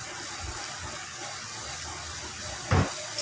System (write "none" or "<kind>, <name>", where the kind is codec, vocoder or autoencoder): none